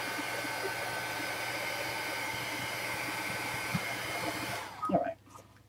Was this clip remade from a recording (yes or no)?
no